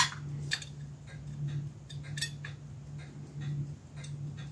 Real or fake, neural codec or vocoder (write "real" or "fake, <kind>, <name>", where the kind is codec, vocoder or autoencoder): real